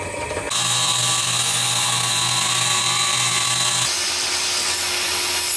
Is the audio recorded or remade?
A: recorded